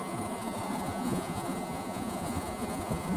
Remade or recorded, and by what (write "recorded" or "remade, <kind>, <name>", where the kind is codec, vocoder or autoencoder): remade, vocoder, Vocos